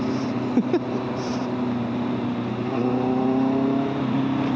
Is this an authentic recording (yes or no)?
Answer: yes